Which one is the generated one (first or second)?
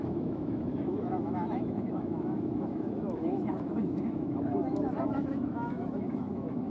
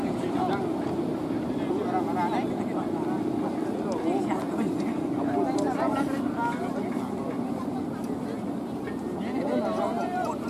first